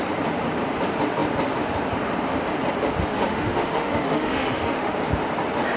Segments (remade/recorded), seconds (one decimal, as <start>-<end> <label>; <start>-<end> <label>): 0.0-3.1 recorded; 3.1-4.9 remade; 4.9-5.8 recorded

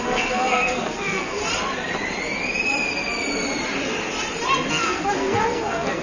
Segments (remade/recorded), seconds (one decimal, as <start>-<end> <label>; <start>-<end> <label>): 0.0-1.4 remade; 1.4-4.7 recorded; 4.7-6.0 remade

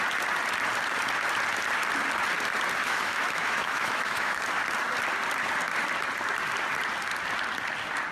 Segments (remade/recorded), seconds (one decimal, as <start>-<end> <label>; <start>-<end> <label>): 0.0-2.8 recorded; 2.8-4.4 remade; 4.4-8.1 recorded

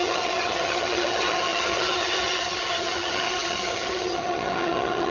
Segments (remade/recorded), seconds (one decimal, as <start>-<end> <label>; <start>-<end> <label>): 0.0-5.1 remade

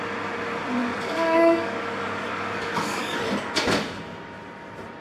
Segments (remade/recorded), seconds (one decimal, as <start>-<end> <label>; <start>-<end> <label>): 0.0-0.8 recorded; 0.8-3.2 remade; 3.2-5.0 recorded